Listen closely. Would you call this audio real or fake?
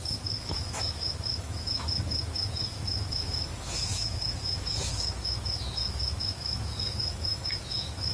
fake